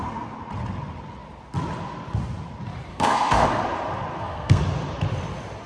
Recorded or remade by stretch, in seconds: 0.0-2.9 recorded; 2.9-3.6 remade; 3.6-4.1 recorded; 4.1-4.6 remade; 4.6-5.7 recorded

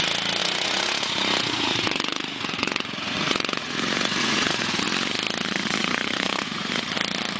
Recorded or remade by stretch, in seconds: 0.0-0.4 recorded; 0.4-4.8 remade; 4.8-5.6 recorded; 5.6-6.8 remade; 6.8-7.4 recorded

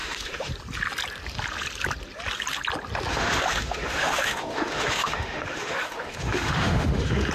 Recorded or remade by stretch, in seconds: 0.0-0.5 remade; 0.5-3.1 recorded; 3.1-7.3 remade

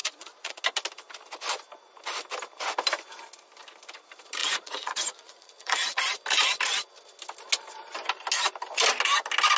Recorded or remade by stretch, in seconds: 0.0-0.6 remade; 0.6-4.4 recorded; 4.4-6.0 remade; 6.0-9.6 recorded

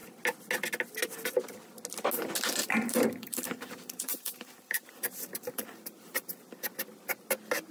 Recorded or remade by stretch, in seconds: 0.0-2.6 recorded; 2.6-6.4 remade; 6.4-7.7 recorded